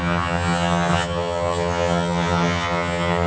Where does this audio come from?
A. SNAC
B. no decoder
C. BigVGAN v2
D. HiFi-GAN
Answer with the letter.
D